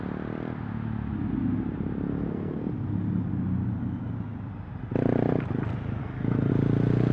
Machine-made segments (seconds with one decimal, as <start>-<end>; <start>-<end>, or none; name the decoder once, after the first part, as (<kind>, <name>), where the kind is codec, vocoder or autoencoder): 2.1-2.6 (codec, SNAC); 6.0-6.5